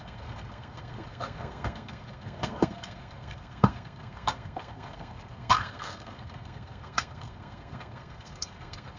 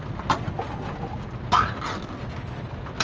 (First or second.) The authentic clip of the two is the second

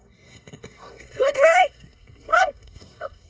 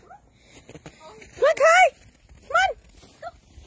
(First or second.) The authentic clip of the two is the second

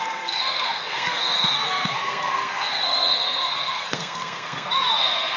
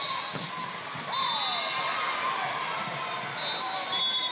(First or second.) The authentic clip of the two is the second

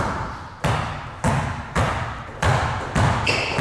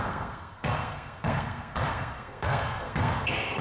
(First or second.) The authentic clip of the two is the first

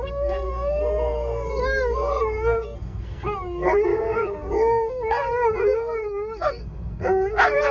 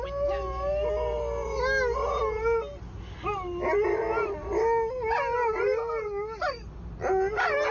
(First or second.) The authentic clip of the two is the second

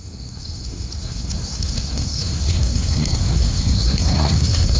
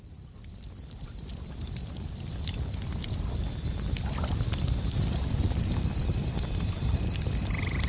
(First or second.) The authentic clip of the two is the second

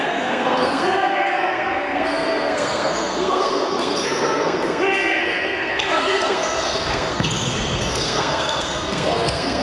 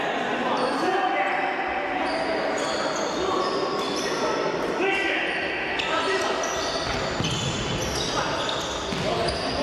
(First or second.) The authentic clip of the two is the second